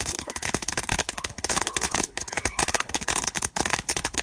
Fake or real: fake